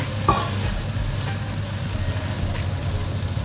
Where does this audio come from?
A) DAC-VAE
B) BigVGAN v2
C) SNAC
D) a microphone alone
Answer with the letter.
D